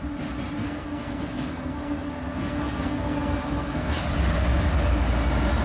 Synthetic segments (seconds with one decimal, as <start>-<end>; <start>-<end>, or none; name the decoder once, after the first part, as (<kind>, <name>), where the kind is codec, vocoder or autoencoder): 0.6-4.0 (codec, SNAC)

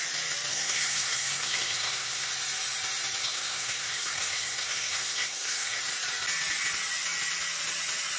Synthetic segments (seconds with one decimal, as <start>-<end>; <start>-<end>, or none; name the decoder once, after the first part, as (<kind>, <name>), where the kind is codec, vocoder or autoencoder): 0.5-2.3 (codec, SNAC); 3.2-5.8

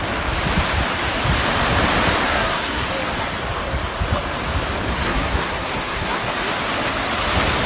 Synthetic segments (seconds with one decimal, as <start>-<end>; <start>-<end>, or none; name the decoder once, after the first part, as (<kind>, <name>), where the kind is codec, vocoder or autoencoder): 2.2-2.9 (codec, SNAC); 4.9-6.3

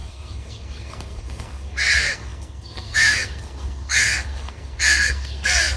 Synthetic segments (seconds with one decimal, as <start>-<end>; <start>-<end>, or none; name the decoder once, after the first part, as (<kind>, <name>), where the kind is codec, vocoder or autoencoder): 0.0-5.8 (codec, SNAC)